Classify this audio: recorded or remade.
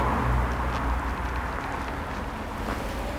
recorded